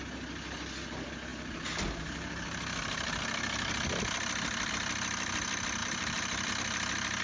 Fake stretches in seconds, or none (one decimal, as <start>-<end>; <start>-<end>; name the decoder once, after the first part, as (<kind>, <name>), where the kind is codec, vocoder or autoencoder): 5.8-6.5 (vocoder, BigVGAN v2)